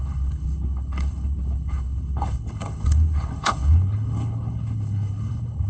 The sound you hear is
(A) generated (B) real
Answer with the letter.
A